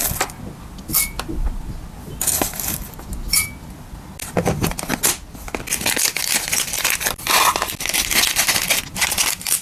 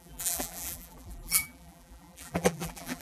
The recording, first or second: first